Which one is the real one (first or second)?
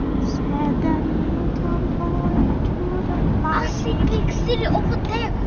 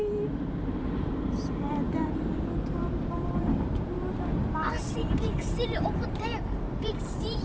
first